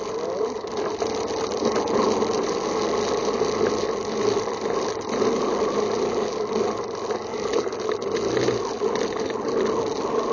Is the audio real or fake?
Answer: real